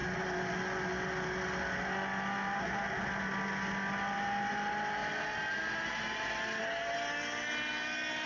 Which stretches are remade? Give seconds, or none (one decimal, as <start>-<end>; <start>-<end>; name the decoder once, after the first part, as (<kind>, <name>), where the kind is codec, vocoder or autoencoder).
none